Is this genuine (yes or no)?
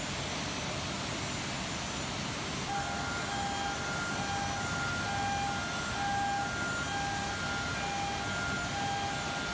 yes